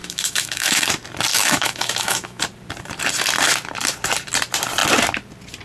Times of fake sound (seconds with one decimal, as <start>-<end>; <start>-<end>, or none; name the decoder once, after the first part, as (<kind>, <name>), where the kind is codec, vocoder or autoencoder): 0.0-0.9 (autoencoder, DAC-VAE); 1.3-2.4